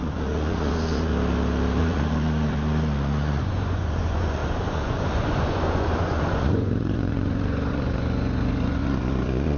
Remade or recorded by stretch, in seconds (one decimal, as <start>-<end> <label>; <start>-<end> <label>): 0.0-1.1 remade; 1.1-1.8 recorded; 1.8-9.6 remade